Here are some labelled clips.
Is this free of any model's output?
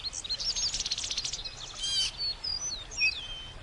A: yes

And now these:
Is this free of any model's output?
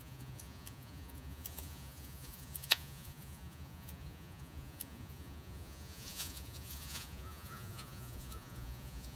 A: no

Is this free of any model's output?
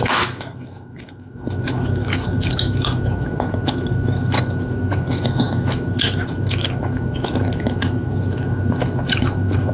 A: no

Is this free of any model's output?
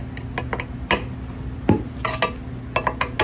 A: yes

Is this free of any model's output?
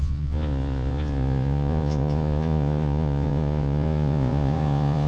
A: no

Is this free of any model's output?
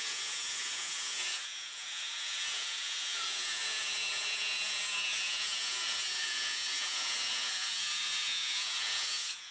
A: no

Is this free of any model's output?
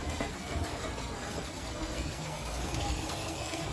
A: no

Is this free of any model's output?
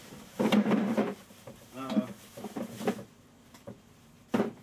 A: no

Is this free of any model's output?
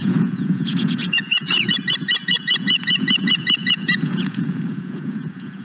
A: no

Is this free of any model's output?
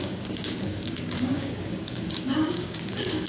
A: no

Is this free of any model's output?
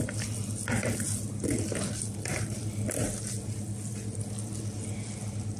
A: yes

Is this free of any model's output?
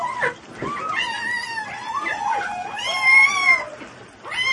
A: yes